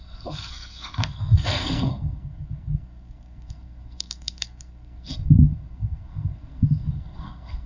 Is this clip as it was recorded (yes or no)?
no